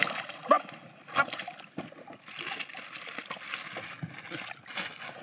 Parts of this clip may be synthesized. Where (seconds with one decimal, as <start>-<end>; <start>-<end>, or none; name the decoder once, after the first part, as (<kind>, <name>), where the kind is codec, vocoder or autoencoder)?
none

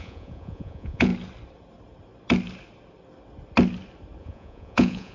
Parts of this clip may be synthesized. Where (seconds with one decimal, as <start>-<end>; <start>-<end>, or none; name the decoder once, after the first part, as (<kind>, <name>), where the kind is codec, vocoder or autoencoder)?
0.0-1.1 (vocoder, Vocos); 4.2-5.1

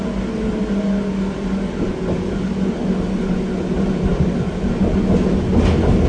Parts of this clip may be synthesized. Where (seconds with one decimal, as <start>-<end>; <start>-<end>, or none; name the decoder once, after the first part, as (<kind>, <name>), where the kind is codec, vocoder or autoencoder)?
none

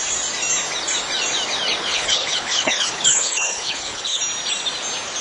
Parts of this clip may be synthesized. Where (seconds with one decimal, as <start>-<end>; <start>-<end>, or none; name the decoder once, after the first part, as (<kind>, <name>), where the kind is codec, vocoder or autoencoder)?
1.8-4.2 (codec, HILCodec)

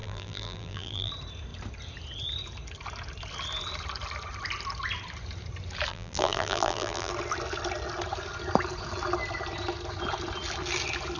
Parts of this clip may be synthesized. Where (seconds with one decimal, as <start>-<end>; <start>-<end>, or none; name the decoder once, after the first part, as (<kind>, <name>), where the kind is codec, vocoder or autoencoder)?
0.0-1.1 (vocoder, BigVGAN v2); 5.9-7.1

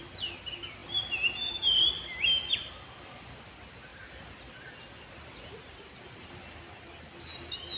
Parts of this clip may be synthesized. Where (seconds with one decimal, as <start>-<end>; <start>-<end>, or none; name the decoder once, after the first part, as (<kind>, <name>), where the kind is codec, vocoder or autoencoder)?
none

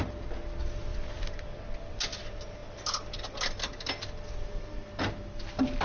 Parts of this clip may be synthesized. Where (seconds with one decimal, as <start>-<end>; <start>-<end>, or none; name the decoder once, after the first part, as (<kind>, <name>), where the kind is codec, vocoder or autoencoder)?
none

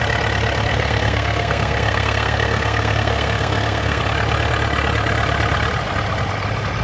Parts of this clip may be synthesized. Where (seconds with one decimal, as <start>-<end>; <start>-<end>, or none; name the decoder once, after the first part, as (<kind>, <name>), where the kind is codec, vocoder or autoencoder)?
0.7-4.0 (codec, SNAC)